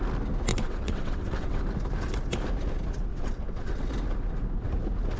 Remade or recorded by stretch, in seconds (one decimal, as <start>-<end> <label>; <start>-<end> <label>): 0.0-0.5 recorded; 0.5-1.6 remade; 1.6-3.1 recorded; 3.1-3.9 remade; 3.9-5.2 recorded

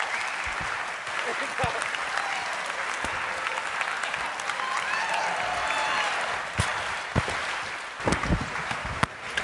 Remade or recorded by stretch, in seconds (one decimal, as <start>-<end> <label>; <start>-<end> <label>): 0.0-6.7 recorded; 6.7-7.6 remade; 7.6-9.4 recorded

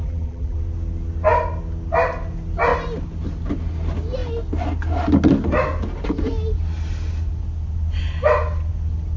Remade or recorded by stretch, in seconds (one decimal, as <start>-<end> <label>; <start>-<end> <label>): 0.0-0.6 remade; 0.6-9.2 recorded

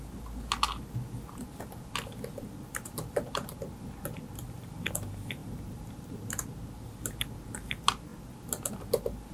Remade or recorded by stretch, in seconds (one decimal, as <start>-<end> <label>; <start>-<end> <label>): 0.0-5.4 recorded; 5.4-6.3 remade; 6.3-9.3 recorded

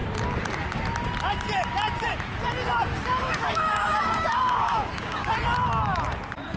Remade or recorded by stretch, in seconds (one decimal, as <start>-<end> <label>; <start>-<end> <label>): 0.0-2.9 recorded; 2.9-5.3 remade; 5.3-6.6 recorded

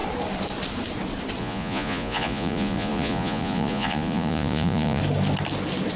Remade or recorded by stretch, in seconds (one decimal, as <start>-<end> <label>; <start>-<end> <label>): 0.0-1.4 recorded; 1.4-5.0 remade; 5.0-6.0 recorded